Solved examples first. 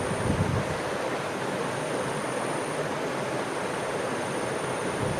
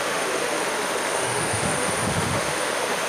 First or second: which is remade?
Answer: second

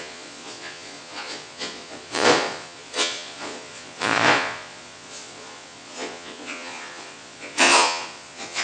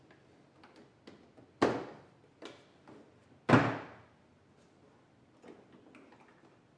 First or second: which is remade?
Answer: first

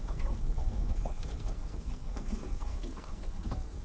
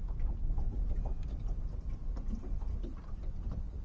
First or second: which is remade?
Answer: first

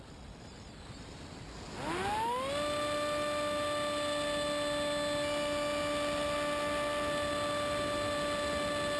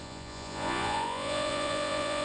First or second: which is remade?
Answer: second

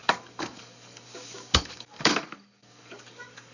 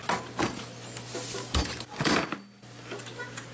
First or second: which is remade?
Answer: first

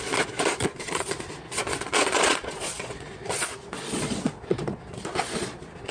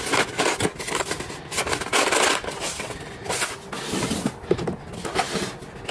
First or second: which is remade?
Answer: first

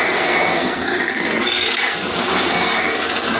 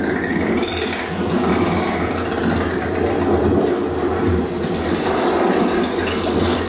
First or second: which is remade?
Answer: first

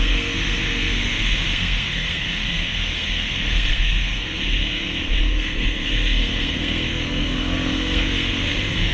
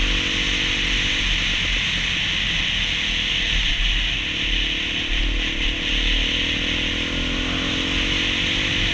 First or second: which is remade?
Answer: first